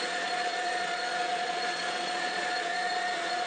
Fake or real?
fake